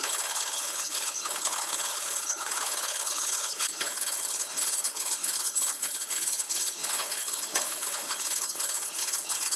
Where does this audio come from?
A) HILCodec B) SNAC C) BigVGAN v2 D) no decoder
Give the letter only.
A